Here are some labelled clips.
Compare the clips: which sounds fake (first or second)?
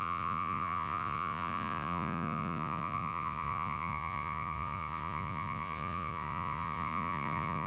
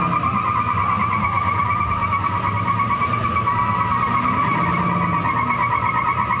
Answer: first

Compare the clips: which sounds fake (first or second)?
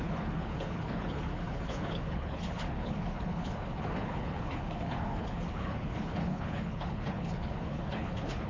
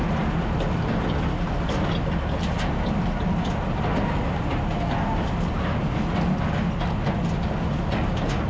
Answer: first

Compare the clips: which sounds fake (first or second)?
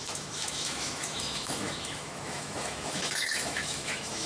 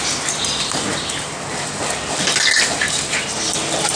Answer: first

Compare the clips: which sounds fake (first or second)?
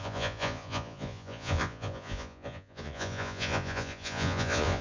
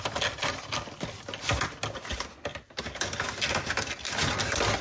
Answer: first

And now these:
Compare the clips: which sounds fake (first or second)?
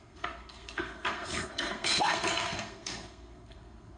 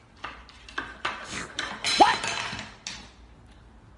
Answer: first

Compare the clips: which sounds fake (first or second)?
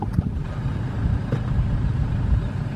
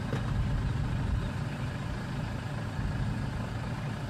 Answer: first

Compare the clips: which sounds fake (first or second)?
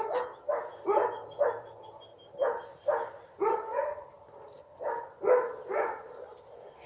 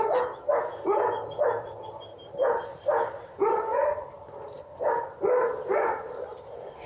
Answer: second